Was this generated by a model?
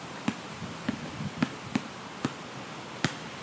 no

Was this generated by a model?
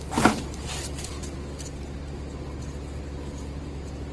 yes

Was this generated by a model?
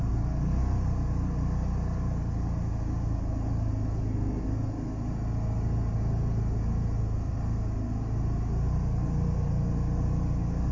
no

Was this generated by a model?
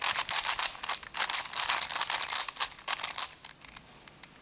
no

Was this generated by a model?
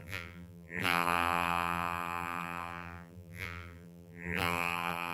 yes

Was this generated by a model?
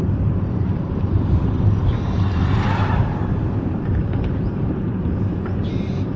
yes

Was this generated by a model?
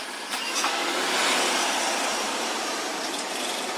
yes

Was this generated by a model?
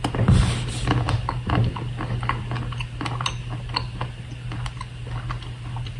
no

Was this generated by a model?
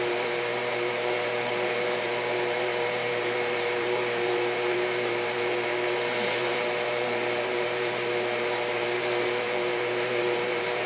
yes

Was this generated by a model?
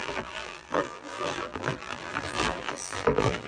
yes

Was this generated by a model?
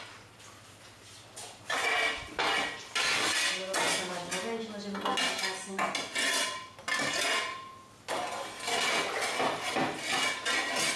no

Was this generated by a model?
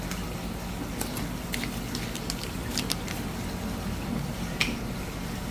no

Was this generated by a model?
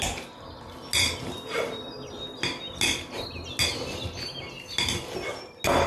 no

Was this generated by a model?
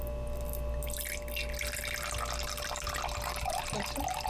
no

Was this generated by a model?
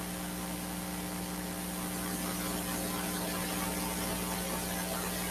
no